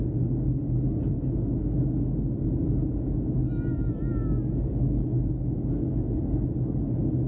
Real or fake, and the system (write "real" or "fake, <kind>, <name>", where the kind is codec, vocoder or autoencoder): real